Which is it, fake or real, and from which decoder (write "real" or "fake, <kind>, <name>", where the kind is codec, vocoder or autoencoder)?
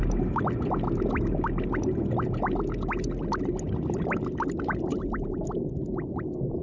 real